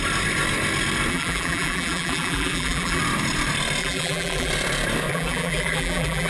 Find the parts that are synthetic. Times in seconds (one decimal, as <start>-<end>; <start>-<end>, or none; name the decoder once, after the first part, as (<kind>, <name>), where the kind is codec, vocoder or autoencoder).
1.1-3.0 (vocoder, BigVGAN v2); 3.8-4.5; 5.1-6.3